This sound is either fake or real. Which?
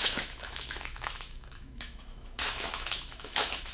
fake